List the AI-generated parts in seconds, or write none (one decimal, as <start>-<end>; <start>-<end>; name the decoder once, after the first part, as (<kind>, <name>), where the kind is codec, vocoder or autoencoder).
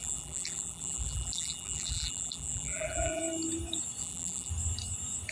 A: 0.0-3.2 (vocoder, BigVGAN v2); 4.0-4.5